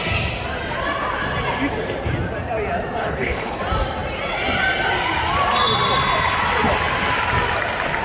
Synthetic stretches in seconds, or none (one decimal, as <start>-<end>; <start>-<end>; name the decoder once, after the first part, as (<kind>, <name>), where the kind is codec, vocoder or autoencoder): 3.0-3.6 (codec, HILCodec)